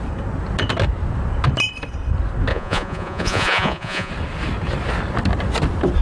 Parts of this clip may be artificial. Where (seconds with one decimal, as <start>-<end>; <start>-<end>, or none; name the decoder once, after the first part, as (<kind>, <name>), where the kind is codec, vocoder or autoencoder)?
2.5-4.1 (vocoder, Vocos)